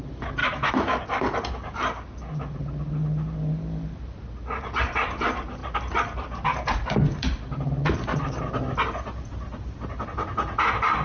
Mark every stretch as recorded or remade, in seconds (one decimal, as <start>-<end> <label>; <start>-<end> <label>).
0.0-0.4 recorded; 0.4-1.0 remade; 1.0-11.0 recorded